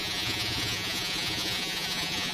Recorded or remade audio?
remade